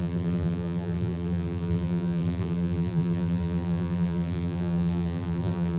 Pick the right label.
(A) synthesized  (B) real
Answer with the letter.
A